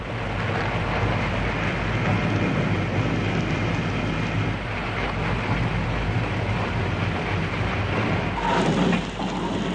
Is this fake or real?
real